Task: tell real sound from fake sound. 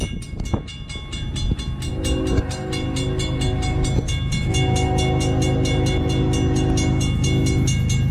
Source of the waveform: real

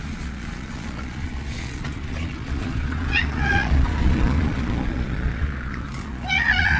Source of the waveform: fake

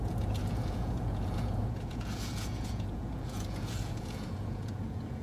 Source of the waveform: fake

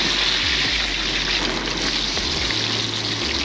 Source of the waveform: real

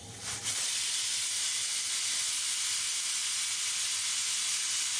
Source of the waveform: real